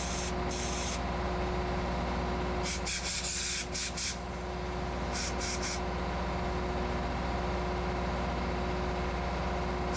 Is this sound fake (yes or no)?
no